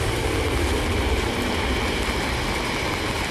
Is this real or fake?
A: real